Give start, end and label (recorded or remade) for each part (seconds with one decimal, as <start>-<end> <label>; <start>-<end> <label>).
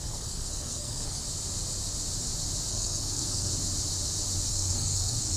0.0-1.2 remade; 1.2-2.7 recorded; 2.7-3.5 remade; 3.5-4.5 recorded; 4.5-5.4 remade